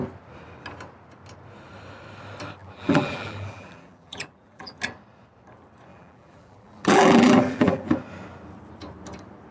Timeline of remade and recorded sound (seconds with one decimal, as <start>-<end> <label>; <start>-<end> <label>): 0.0-2.6 recorded; 2.6-4.7 remade; 4.7-5.9 recorded; 5.9-7.9 remade; 7.9-9.5 recorded